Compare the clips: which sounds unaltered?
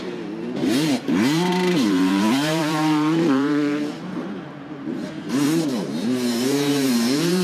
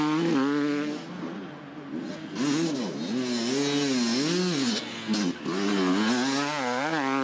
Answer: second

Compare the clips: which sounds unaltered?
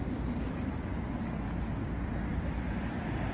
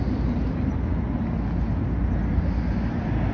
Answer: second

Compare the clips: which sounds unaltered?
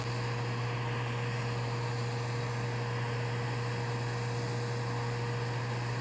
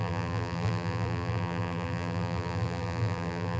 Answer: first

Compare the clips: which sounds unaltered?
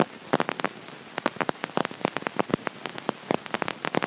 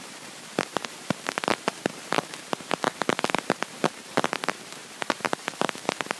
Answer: first